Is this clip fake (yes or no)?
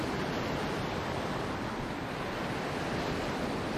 no